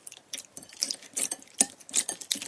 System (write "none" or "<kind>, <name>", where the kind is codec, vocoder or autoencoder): none